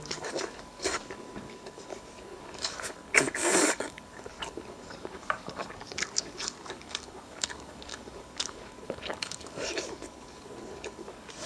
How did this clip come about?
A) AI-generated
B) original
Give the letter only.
A